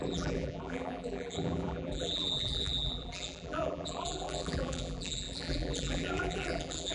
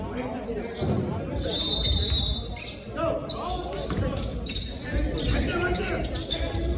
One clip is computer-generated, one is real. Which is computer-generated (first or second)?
first